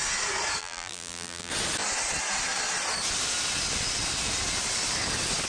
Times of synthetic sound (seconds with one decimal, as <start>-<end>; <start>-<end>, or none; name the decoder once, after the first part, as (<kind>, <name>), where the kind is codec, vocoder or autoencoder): 0.6-1.5 (vocoder, BigVGAN v2)